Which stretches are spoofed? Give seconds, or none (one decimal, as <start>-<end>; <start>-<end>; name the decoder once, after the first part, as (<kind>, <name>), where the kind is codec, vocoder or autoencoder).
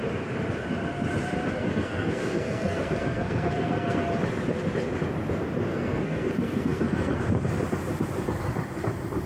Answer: 1.6-4.0 (codec, SNAC); 5.7-7.2